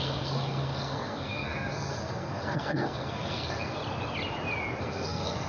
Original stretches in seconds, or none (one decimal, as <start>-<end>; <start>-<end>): 3.8-4.8